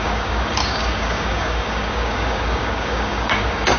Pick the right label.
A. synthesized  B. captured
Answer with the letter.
A